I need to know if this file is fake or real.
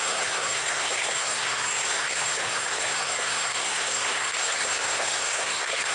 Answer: fake